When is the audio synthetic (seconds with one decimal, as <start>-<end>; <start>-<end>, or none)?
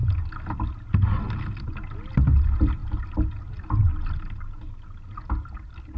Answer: none